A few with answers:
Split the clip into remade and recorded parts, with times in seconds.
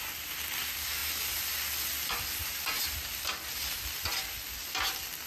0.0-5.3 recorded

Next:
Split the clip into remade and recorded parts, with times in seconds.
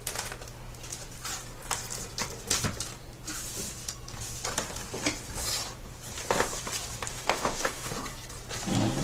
0.0-7.1 recorded; 7.1-7.9 remade; 7.9-9.0 recorded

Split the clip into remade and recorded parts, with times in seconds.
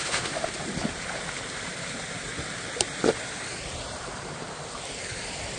0.0-0.5 remade; 0.5-5.6 recorded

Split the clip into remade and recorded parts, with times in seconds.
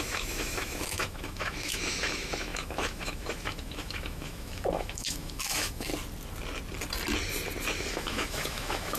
0.0-5.9 remade; 5.9-7.9 recorded; 7.9-9.0 remade